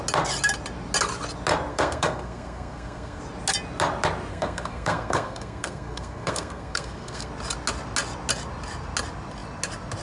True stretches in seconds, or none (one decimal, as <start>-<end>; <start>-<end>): 0.0-1.7; 3.2-4.3; 7.3-10.0